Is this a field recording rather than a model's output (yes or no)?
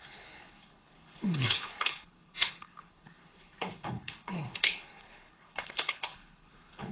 no